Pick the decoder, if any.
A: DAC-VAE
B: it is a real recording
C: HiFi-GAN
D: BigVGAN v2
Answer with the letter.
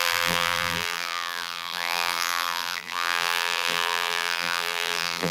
D